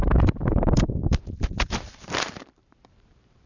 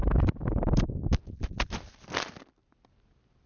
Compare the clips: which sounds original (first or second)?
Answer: second